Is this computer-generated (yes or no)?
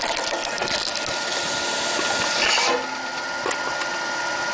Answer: no